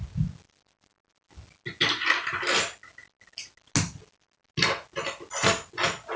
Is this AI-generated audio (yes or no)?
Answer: no